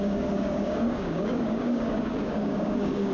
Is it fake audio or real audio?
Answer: fake